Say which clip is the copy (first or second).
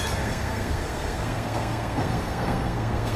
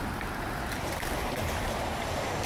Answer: first